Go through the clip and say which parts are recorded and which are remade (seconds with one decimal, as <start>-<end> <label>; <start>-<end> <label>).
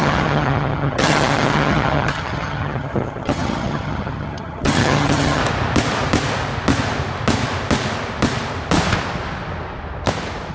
0.0-5.4 remade; 5.4-10.5 recorded